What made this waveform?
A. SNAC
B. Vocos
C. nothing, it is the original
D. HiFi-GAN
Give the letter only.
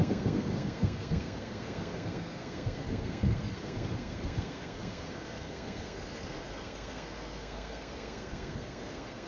A